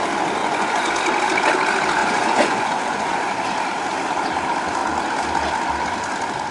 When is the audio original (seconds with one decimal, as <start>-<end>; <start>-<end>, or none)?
0.0-0.4; 0.9-2.0; 3.3-6.5

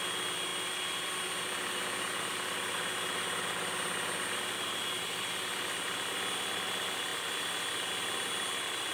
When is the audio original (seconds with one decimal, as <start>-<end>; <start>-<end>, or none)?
0.0-8.9

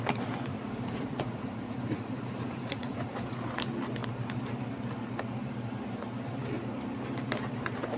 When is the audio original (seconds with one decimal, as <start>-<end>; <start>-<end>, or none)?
0.0-0.5; 3.5-8.0